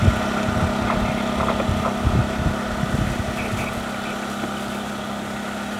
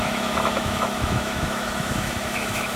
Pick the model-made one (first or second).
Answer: second